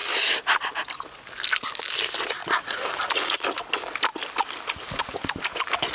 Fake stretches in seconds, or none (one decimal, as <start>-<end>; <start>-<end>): 2.4-3.1